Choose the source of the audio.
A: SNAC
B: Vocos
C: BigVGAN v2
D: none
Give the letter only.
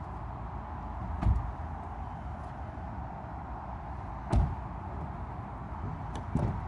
D